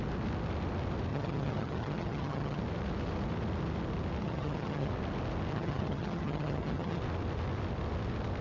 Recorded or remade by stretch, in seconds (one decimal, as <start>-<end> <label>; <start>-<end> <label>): 0.0-1.1 recorded; 1.1-2.6 remade; 2.6-4.2 recorded; 4.2-4.9 remade; 4.9-5.5 recorded; 5.5-7.0 remade; 7.0-8.4 recorded